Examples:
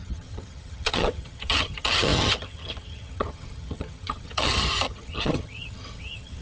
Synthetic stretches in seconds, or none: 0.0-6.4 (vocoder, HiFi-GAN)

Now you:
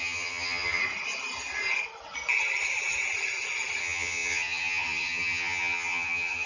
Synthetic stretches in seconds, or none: 0.0-0.8 (vocoder, HiFi-GAN); 3.8-6.5

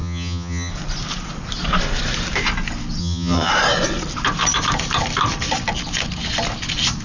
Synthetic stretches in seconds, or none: 0.0-0.7 (vocoder, HiFi-GAN); 3.0-3.5

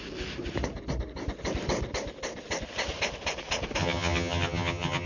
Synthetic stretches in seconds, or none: 3.8-5.1 (vocoder, HiFi-GAN)

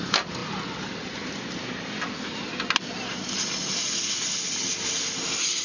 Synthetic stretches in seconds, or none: none

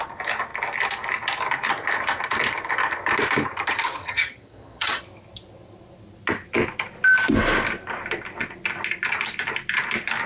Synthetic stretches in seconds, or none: 4.0-5.0 (vocoder, HiFi-GAN)